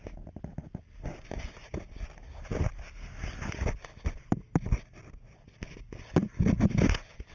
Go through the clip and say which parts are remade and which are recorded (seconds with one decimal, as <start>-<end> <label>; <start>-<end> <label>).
0.0-7.3 recorded